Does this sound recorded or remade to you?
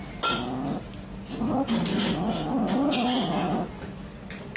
recorded